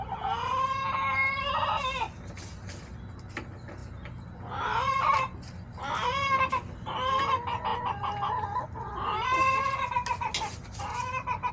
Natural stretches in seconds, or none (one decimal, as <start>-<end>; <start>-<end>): 0.0-11.5